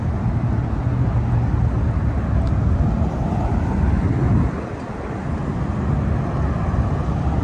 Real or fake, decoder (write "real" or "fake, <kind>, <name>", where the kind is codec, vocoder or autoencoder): real